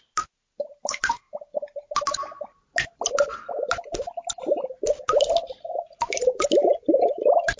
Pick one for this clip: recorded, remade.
recorded